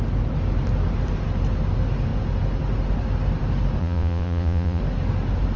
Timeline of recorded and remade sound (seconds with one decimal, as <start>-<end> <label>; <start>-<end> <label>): 0.0-3.8 recorded; 3.8-4.8 remade; 4.8-5.6 recorded